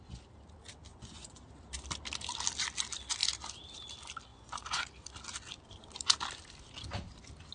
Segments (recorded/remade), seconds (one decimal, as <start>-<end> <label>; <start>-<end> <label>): 0.0-0.9 recorded; 0.9-1.4 remade; 1.4-4.3 recorded; 4.3-4.9 remade; 4.9-7.5 recorded